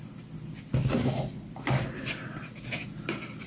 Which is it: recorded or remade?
recorded